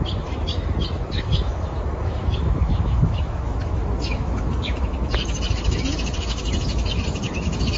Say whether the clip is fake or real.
fake